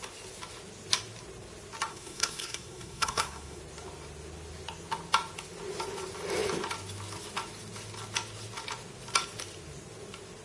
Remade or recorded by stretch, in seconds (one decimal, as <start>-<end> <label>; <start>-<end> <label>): 0.0-1.9 recorded; 1.9-3.6 remade; 3.6-10.4 recorded